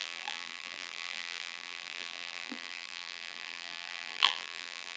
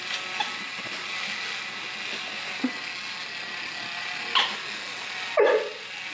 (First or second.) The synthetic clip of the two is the first